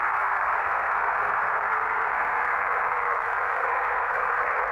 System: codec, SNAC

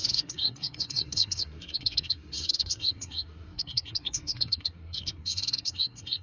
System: codec, SNAC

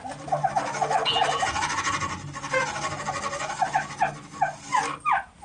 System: none